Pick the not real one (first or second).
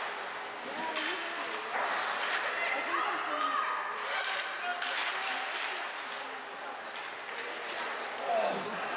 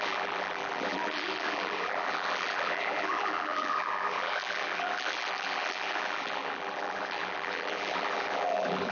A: second